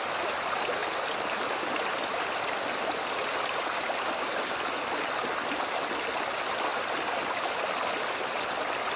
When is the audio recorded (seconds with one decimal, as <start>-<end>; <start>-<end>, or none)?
0.0-0.8; 5.5-9.0